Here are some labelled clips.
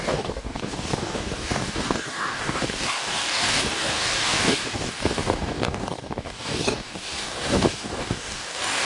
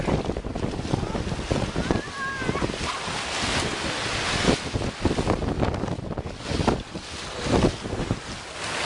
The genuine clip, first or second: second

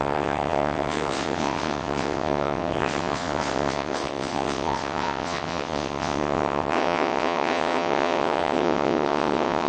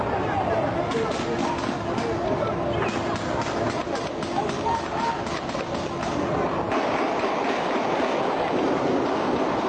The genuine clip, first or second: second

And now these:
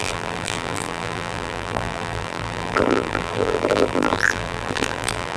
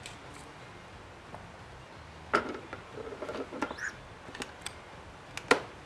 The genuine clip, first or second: second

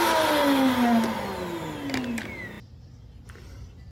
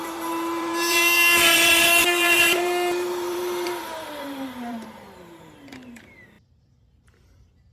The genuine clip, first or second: first